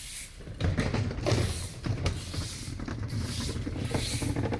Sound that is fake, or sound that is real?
real